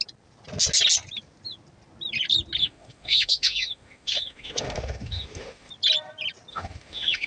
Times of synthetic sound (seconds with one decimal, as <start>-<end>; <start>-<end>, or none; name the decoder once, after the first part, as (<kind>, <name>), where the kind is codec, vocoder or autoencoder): 2.6-5.7 (autoencoder, DAC-VAE); 6.5-7.3